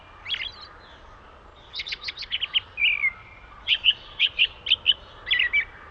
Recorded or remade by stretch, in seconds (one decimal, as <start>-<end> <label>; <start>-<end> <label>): 0.0-1.5 recorded; 1.5-2.4 remade; 2.4-3.2 recorded; 3.2-4.6 remade; 4.6-5.9 recorded